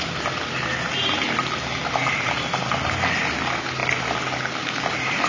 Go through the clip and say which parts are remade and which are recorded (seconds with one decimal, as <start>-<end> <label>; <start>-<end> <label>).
0.0-1.8 recorded; 1.8-3.2 remade; 3.2-5.3 recorded